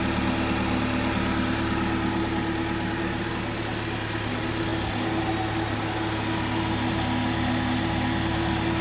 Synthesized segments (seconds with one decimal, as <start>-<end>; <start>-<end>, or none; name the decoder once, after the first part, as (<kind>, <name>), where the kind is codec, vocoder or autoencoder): none